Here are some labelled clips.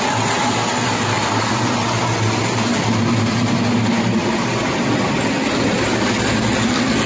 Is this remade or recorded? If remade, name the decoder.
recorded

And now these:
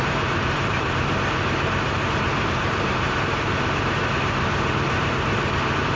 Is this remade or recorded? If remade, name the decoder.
remade, vocoder, BigVGAN v2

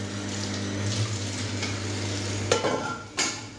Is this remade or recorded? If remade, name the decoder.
recorded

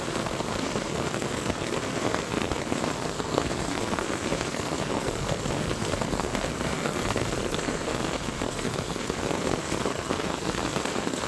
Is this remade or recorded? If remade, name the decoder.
remade, codec, SNAC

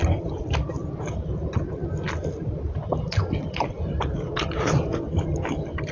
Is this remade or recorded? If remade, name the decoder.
recorded